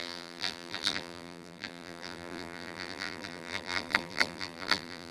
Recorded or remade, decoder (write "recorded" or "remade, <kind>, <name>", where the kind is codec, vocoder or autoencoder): remade, vocoder, BigVGAN v2